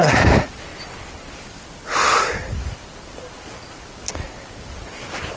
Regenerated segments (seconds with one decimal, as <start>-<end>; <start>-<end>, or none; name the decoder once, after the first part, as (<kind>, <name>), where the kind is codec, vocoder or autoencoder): 0.7-3.6 (vocoder, BigVGAN v2)